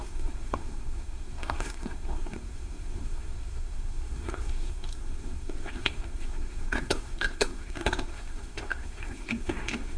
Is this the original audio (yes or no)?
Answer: no